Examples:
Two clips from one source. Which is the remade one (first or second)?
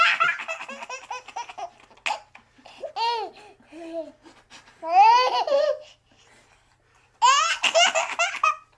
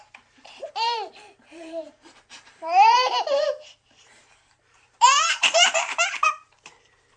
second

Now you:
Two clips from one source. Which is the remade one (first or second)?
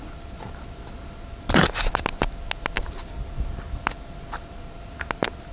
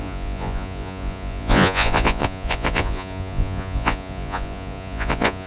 second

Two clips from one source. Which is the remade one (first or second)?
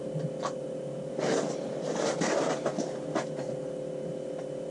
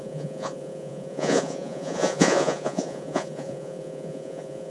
second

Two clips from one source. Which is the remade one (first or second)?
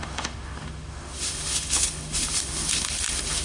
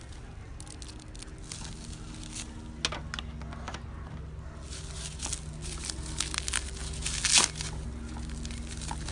first